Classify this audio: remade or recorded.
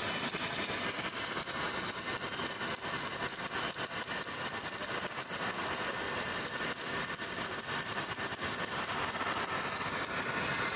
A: recorded